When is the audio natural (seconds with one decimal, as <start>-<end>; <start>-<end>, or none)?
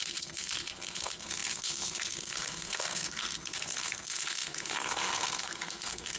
none